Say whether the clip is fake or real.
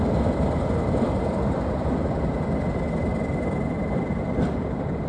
real